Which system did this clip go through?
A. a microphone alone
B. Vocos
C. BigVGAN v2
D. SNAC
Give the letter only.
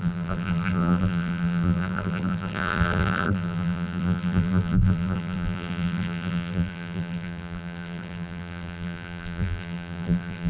C